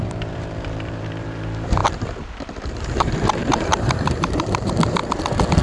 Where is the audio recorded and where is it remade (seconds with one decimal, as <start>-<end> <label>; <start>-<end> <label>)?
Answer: 0.0-5.0 remade; 5.0-5.6 recorded